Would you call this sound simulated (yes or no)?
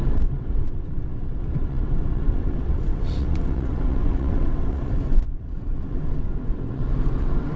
yes